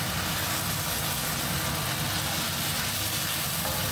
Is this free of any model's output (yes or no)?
yes